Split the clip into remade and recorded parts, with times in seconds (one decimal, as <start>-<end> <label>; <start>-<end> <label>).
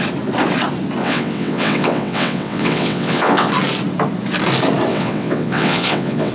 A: 0.0-1.0 recorded; 1.0-3.5 remade; 3.5-4.9 recorded; 4.9-6.3 remade